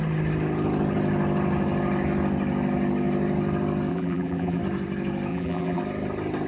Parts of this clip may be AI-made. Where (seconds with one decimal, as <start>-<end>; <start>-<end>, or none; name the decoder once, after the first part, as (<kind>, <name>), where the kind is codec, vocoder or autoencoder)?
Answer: 3.9-4.6 (vocoder, BigVGAN v2); 5.3-5.8